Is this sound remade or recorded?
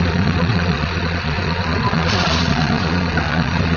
remade